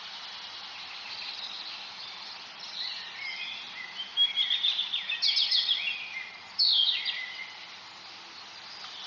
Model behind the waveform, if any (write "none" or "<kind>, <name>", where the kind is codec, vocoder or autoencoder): none